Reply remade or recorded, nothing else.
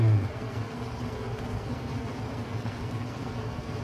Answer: remade